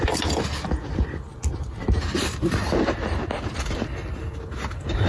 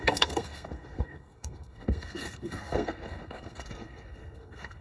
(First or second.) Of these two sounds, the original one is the first